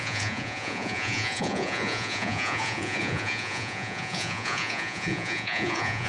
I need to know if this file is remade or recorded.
remade